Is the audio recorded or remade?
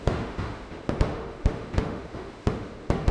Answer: remade